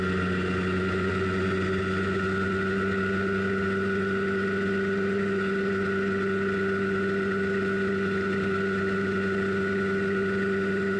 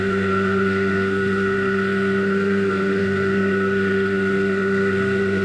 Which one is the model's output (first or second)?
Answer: second